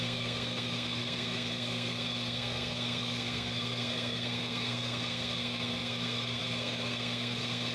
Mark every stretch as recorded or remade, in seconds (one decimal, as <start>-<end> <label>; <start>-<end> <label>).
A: 0.0-7.7 remade